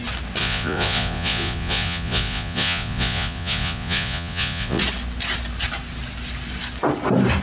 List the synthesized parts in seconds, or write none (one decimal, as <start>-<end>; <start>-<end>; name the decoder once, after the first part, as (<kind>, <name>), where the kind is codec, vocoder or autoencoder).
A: 0.4-4.8 (vocoder, Vocos)